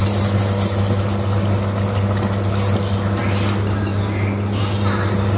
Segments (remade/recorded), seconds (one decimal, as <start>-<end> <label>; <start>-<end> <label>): 0.0-5.4 recorded